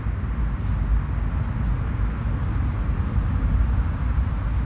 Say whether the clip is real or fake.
real